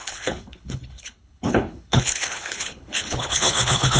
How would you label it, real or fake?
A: fake